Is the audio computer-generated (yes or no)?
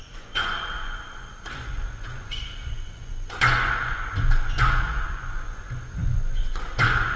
yes